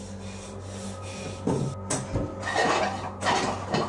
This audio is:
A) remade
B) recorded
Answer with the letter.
B